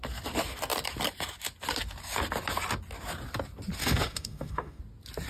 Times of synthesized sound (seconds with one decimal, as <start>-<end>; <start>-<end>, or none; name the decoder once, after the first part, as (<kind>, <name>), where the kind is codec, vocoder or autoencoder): 3.8-4.8 (autoencoder, DAC-VAE)